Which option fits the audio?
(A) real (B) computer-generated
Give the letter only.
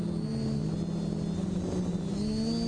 A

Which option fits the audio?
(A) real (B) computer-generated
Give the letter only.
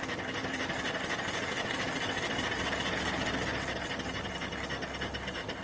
A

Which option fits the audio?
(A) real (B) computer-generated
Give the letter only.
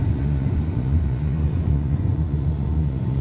B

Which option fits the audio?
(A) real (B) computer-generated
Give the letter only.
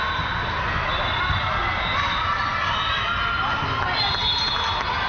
A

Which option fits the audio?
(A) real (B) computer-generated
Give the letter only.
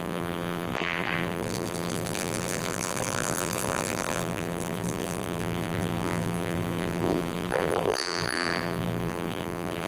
B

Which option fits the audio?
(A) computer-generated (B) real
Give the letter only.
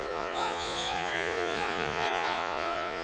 A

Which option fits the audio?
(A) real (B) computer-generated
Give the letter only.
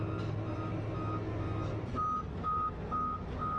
A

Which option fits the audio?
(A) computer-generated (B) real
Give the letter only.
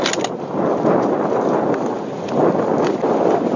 B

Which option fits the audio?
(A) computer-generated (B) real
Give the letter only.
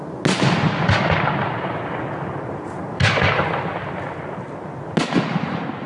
B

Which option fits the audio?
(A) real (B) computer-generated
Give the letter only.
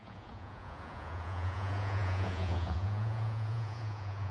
B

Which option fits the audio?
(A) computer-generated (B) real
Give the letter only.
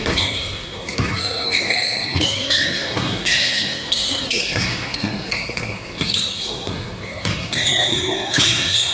A